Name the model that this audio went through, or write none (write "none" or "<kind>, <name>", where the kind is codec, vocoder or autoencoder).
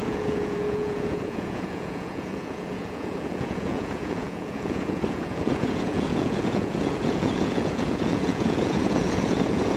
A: vocoder, Vocos